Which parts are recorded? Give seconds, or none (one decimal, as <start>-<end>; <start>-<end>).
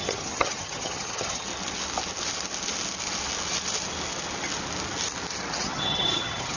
1.5-5.5